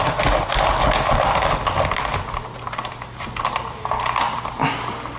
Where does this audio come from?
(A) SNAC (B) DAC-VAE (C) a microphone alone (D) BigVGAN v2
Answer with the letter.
C